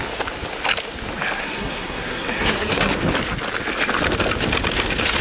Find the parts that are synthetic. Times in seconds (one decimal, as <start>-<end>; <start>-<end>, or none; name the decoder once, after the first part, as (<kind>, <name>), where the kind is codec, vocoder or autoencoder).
1.4-2.9 (codec, SNAC)